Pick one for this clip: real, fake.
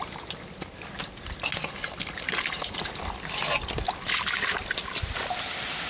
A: real